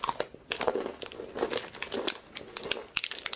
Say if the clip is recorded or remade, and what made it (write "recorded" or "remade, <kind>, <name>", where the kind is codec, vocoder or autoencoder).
recorded